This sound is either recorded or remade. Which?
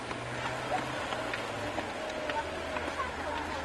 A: recorded